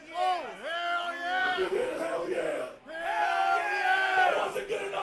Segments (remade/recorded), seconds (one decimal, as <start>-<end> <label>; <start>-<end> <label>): 0.0-1.4 recorded; 1.4-2.0 remade; 2.0-5.0 recorded